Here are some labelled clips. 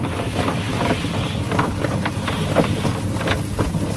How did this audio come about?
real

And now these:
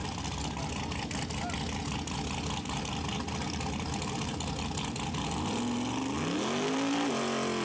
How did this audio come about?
real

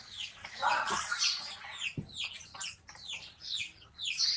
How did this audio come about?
real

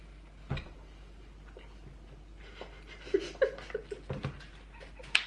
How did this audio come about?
real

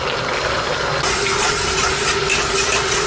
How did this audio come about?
real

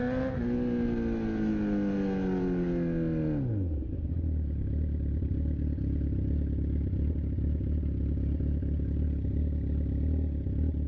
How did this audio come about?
real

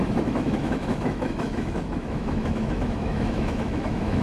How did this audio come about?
fake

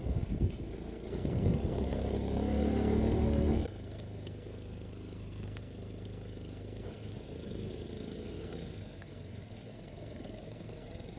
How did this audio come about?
fake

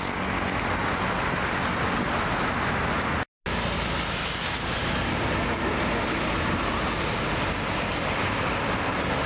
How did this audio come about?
real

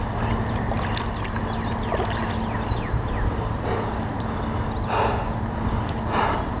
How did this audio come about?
real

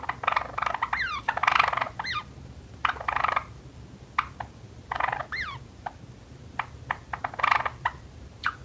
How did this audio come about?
real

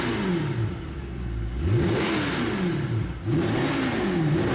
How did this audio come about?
real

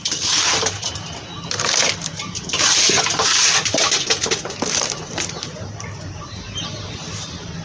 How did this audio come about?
fake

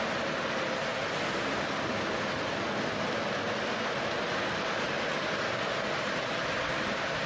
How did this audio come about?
real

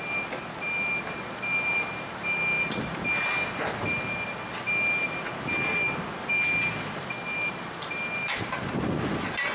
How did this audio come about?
real